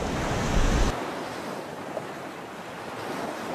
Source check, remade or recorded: recorded